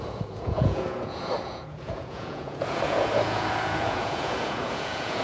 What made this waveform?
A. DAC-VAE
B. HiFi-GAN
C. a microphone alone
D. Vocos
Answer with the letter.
D